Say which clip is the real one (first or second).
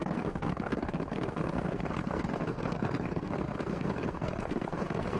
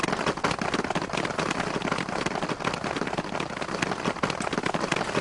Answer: second